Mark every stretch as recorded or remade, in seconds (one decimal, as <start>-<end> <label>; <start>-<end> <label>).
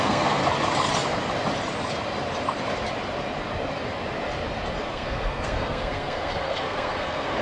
0.0-0.4 remade; 0.4-4.8 recorded; 4.8-7.4 remade